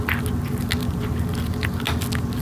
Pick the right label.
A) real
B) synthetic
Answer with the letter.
A